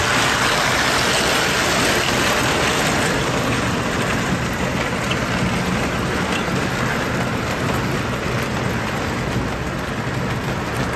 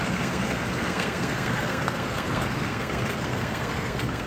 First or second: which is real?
first